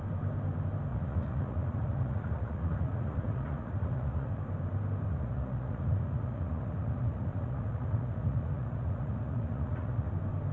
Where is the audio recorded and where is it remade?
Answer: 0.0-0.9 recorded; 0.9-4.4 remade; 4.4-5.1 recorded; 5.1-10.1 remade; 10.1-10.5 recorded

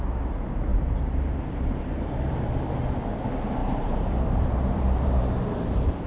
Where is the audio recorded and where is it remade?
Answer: 0.0-0.7 recorded; 0.7-2.9 remade; 2.9-3.6 recorded; 3.6-5.4 remade; 5.4-6.1 recorded

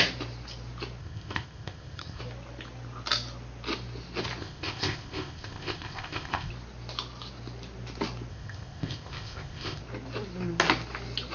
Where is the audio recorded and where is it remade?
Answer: 0.0-1.0 recorded; 1.0-2.2 remade; 2.2-4.4 recorded; 4.4-6.5 remade; 6.5-8.3 recorded; 8.3-9.8 remade; 9.8-11.3 recorded

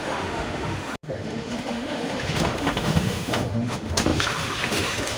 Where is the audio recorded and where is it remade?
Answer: 0.0-5.2 remade

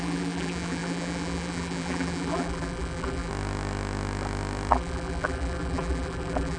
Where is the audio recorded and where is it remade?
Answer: 0.0-3.3 remade; 3.3-4.7 recorded; 4.7-6.6 remade

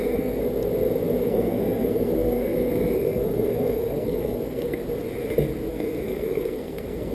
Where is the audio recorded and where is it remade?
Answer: 0.0-0.4 remade; 0.4-1.2 recorded; 1.2-4.8 remade; 4.8-5.7 recorded; 5.7-7.1 remade

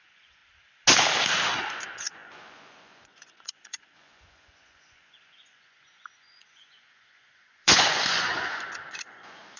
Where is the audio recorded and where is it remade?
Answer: 0.0-0.4 remade; 0.4-1.6 recorded; 1.6-9.6 remade